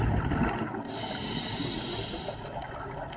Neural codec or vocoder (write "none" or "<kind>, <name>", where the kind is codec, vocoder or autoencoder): none